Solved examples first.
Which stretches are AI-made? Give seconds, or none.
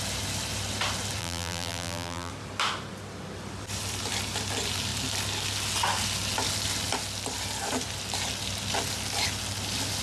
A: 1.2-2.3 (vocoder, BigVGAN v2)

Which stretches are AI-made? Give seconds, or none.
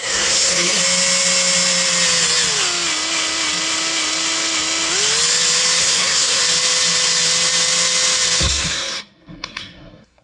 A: 0.0-0.8 (codec, SNAC); 5.8-6.4; 8.4-10.2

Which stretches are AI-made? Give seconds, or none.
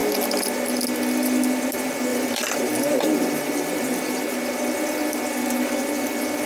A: 2.1-4.2 (vocoder, BigVGAN v2)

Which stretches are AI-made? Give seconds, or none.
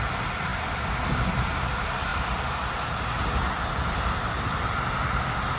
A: none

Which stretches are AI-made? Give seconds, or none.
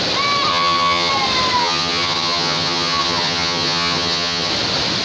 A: 0.5-1.1 (vocoder, HiFi-GAN); 1.6-4.5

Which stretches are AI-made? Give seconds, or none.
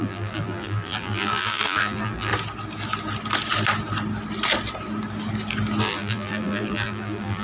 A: 0.0-2.3 (vocoder, BigVGAN v2); 5.8-7.4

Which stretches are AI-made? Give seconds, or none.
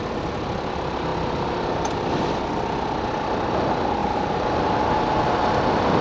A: 4.0-4.8 (vocoder, BigVGAN v2)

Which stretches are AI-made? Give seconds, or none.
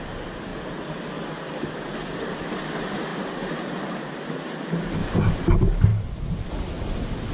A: 3.1-4.0 (vocoder, BigVGAN v2); 5.0-5.5; 5.9-6.5